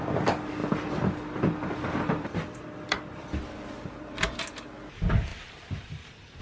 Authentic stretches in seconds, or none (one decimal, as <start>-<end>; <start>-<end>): 0.0-0.6; 4.4-5.3